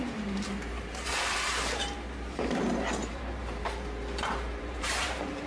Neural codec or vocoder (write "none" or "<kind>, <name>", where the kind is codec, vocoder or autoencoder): vocoder, BigVGAN v2